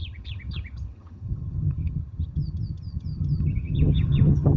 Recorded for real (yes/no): no